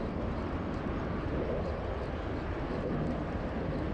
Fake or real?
real